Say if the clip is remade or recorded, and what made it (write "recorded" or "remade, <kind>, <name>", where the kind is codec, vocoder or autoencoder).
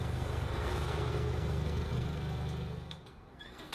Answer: remade, codec, SNAC